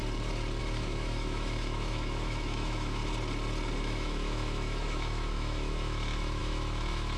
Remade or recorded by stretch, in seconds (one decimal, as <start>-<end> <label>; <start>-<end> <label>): 0.0-0.6 recorded; 0.6-3.0 remade; 3.0-3.8 recorded; 3.8-7.2 remade